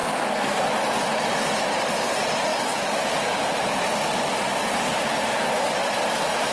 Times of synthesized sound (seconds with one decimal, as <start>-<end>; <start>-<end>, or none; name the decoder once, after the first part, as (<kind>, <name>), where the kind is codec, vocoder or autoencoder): 0.0-0.7 (codec, SNAC)